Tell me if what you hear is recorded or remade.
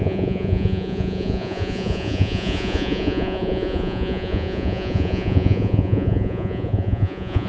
remade